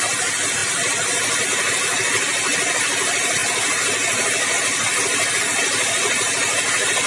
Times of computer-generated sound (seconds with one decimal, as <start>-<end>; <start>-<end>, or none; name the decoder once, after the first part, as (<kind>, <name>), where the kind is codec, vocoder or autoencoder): none